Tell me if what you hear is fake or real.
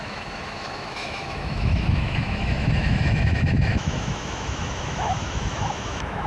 fake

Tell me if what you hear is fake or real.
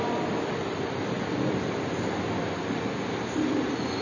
real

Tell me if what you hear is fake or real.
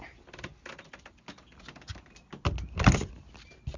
real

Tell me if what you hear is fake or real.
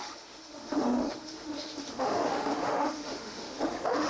fake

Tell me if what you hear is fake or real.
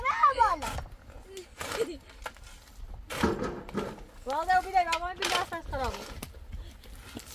real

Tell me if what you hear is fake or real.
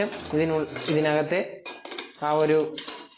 real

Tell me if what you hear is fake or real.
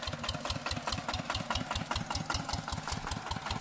real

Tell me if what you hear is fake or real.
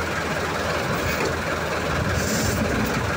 real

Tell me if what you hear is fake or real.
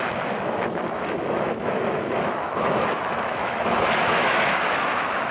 fake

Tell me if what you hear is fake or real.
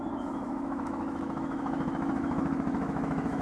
fake